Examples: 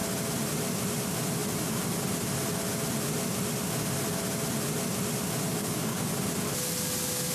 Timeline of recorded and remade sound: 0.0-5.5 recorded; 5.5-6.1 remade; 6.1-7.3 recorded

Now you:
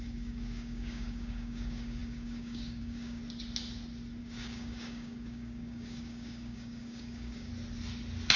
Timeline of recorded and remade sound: 0.0-3.2 remade; 3.2-4.2 recorded; 4.2-7.5 remade; 7.5-8.4 recorded

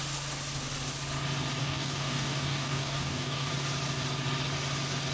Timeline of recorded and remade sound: 0.0-1.6 recorded; 1.6-3.5 remade; 3.5-5.1 recorded